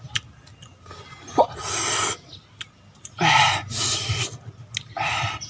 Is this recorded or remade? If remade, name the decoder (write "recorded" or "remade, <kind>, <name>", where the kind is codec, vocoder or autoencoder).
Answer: recorded